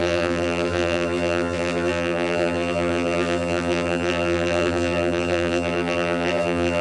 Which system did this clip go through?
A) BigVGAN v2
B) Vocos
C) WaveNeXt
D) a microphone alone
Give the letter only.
A